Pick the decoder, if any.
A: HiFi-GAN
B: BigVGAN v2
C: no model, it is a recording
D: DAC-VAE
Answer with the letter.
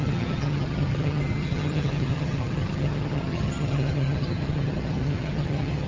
A